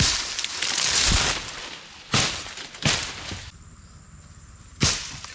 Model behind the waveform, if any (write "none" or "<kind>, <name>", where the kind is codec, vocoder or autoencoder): none